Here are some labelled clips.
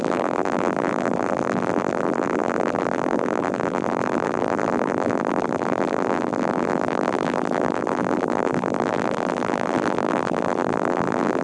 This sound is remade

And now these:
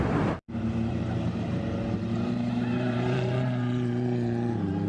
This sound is remade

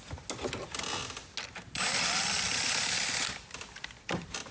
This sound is recorded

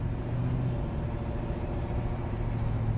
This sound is recorded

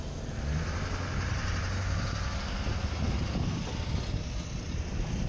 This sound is recorded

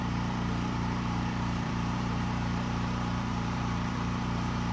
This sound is remade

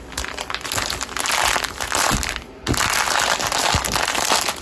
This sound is recorded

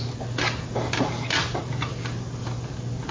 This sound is recorded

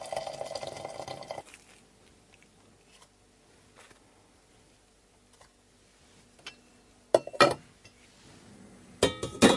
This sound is recorded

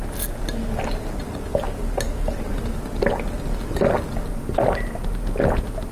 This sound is recorded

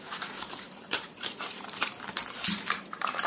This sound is remade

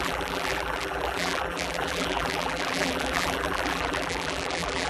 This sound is remade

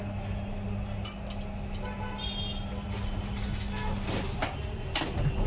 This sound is recorded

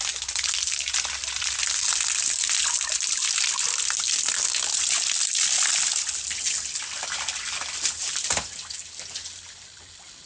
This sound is recorded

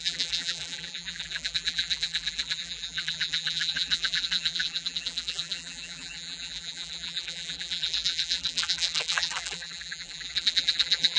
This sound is remade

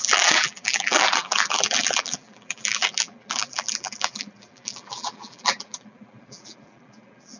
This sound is remade